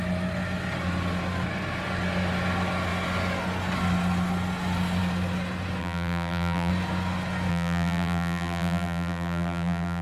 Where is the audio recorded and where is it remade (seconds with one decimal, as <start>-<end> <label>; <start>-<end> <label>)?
0.0-5.8 recorded; 5.8-6.7 remade; 6.7-7.5 recorded; 7.5-10.0 remade